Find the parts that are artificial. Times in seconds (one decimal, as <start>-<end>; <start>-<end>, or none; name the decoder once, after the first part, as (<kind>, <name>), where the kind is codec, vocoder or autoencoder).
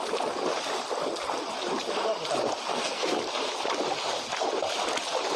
2.7-3.2 (codec, SNAC)